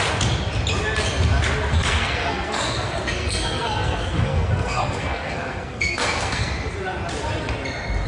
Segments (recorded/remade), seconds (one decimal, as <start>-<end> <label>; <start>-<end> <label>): 0.0-1.7 recorded; 1.7-6.5 remade; 6.5-8.1 recorded